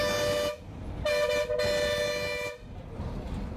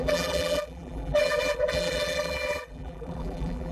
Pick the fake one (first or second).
second